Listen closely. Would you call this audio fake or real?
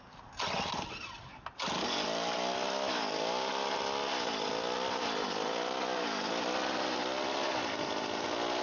real